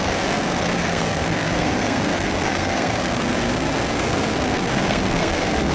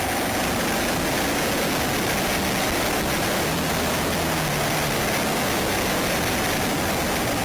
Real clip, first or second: second